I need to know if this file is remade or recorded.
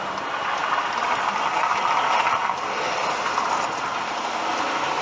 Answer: recorded